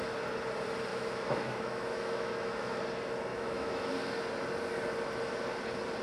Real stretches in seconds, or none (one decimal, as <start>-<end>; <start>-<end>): 0.0-0.9; 2.8-3.3; 3.9-6.0